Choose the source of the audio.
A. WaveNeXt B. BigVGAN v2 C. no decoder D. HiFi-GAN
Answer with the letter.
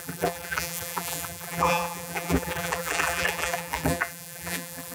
B